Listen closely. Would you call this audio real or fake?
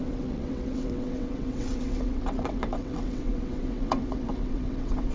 fake